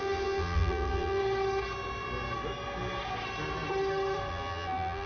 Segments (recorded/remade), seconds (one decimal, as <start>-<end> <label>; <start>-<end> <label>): 0.0-1.2 remade; 1.2-4.3 recorded; 4.3-5.1 remade